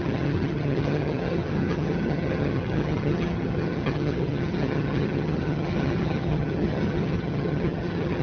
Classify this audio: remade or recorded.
remade